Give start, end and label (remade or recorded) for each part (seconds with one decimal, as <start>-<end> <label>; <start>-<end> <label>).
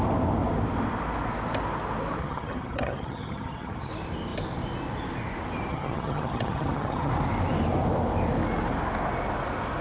0.0-2.2 recorded; 2.2-3.9 remade; 3.9-5.7 recorded; 5.7-7.1 remade; 7.1-9.8 recorded